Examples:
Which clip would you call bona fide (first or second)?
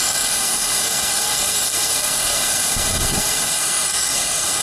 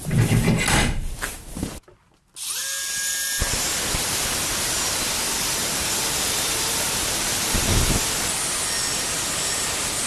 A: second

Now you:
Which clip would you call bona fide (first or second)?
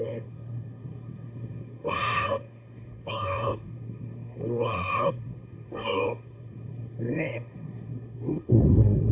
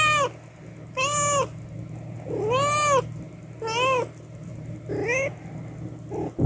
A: second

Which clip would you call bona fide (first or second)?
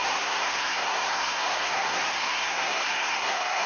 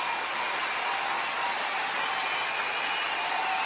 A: second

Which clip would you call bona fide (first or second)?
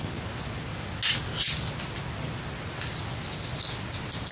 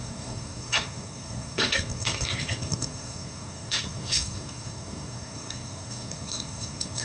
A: first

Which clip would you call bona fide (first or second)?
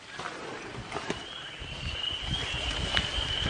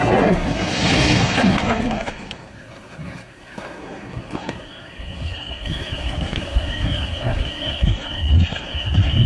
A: first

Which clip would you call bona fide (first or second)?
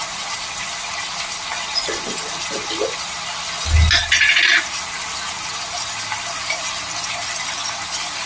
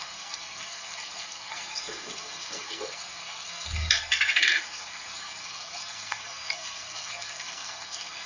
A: first